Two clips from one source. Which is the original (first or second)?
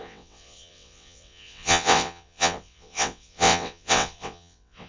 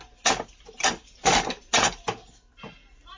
second